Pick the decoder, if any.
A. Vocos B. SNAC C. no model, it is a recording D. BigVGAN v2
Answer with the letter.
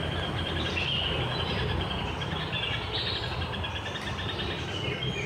D